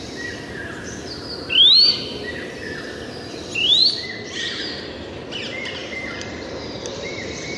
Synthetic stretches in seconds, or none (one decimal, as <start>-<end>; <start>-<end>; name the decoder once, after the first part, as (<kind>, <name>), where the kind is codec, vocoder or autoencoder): 3.8-4.6 (vocoder, BigVGAN v2); 5.8-7.6